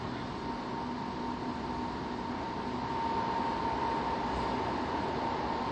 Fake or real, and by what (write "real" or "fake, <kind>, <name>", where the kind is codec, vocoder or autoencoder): real